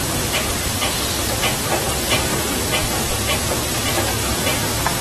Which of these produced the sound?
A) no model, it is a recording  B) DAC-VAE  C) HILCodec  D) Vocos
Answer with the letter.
A